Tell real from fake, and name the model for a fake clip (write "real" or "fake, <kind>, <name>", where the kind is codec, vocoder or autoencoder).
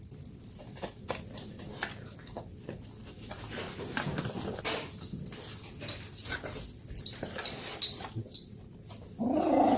real